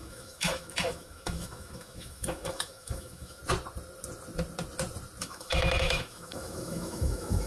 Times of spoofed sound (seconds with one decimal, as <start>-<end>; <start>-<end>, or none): 0.0-3.4; 5.2-7.5